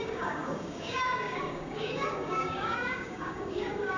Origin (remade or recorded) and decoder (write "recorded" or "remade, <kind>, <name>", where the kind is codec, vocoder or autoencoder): remade, codec, DAC